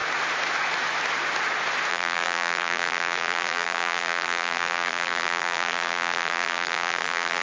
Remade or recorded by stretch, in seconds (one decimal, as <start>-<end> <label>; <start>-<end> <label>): 0.0-1.9 recorded; 1.9-7.4 remade